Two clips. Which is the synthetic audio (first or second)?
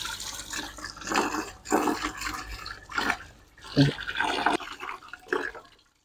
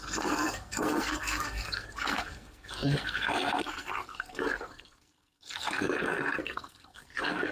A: second